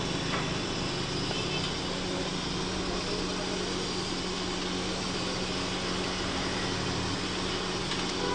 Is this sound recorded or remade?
recorded